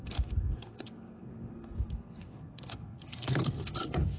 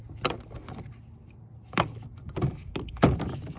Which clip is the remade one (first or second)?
first